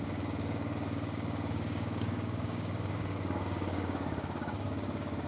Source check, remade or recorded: remade